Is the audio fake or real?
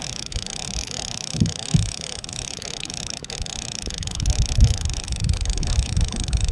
fake